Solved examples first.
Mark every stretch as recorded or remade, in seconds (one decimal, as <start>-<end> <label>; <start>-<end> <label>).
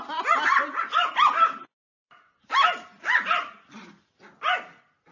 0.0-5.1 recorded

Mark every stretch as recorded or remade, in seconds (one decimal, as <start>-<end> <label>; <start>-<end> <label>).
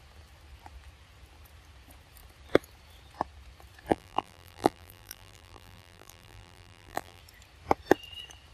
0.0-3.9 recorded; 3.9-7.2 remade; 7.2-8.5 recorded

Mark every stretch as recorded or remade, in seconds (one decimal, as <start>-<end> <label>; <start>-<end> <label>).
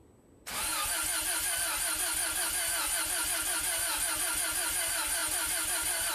0.0-6.1 recorded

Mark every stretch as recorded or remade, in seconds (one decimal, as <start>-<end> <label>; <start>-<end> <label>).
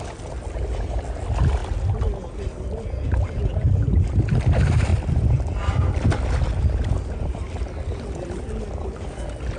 0.0-9.6 recorded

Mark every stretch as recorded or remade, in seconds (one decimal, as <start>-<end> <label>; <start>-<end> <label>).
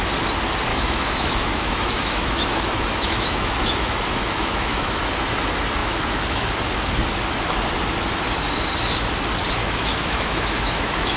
0.0-0.7 recorded; 0.7-5.0 remade; 5.0-5.8 recorded; 5.8-6.5 remade; 6.5-9.6 recorded; 9.6-11.2 remade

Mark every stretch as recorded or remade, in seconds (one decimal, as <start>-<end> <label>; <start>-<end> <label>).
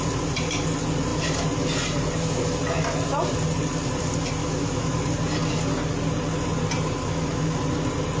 0.0-4.4 recorded; 4.4-5.0 remade; 5.0-7.0 recorded; 7.0-7.6 remade; 7.6-8.2 recorded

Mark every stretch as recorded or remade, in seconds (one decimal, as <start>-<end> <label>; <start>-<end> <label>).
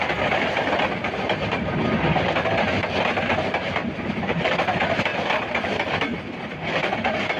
0.0-1.8 remade; 1.8-3.3 recorded; 3.3-5.1 remade; 5.1-7.4 recorded